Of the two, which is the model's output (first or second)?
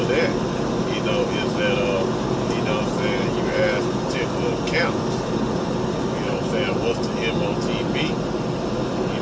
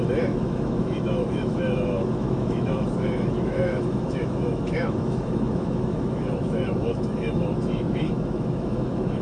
second